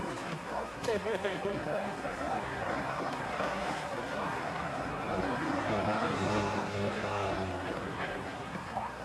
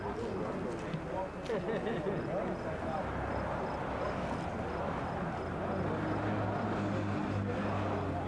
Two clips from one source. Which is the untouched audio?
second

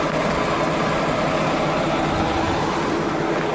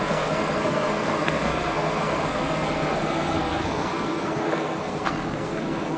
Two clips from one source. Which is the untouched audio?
first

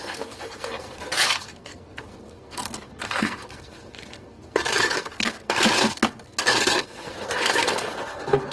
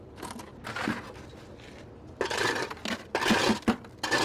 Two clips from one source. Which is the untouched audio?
second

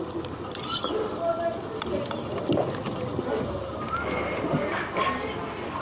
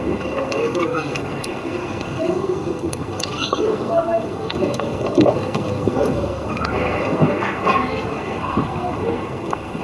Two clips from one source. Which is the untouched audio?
first